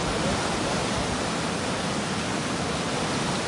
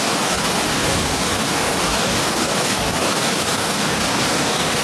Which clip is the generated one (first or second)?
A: second